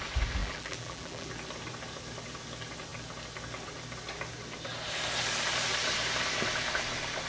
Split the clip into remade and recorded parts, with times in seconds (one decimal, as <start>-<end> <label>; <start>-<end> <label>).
0.0-0.4 recorded; 0.4-1.3 remade; 1.3-7.3 recorded